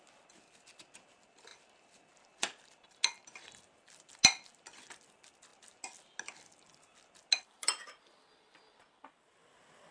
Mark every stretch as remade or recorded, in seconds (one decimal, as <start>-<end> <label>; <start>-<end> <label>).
0.0-9.9 recorded